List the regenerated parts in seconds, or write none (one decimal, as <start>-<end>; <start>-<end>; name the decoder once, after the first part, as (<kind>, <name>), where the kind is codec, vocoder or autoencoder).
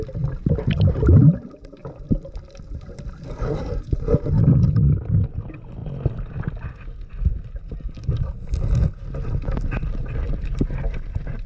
none